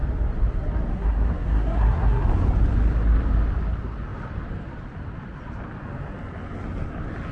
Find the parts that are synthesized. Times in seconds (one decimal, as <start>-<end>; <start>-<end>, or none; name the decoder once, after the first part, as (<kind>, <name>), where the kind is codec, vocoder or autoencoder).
0.9-2.2 (codec, SNAC)